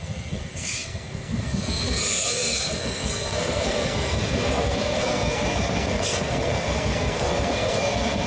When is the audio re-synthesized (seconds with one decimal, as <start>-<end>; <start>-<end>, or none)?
0.0-8.3